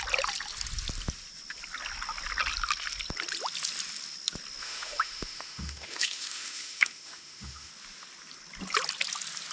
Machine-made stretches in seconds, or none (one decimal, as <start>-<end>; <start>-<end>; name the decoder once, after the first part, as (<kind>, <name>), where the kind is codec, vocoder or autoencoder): 4.6-7.7 (autoencoder, DAC-VAE)